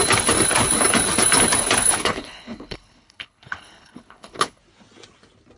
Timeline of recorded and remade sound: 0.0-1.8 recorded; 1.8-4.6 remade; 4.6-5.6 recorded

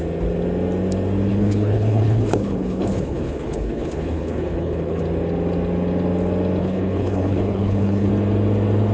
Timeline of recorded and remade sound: 0.0-1.3 recorded; 1.3-5.0 remade; 5.0-6.6 recorded; 6.6-8.1 remade; 8.1-8.9 recorded

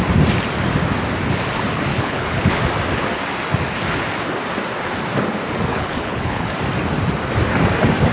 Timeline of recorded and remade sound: 0.0-1.9 recorded; 1.9-2.6 remade; 2.6-5.7 recorded; 5.7-6.5 remade; 6.5-8.1 recorded

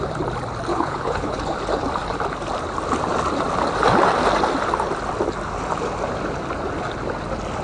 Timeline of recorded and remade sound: 0.0-0.7 recorded; 0.7-1.4 remade; 1.4-7.6 recorded

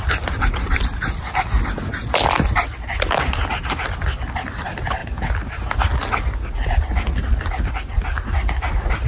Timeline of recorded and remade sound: 0.0-9.1 recorded

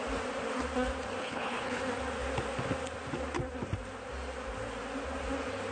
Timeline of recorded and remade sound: 0.0-1.2 recorded; 1.2-1.8 remade; 1.8-5.7 recorded

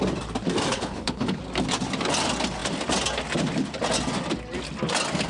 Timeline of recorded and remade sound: 0.0-0.7 recorded; 0.7-1.4 remade; 1.4-5.3 recorded